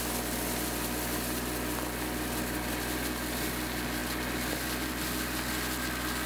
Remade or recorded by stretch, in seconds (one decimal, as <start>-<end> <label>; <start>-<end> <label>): 0.0-6.3 recorded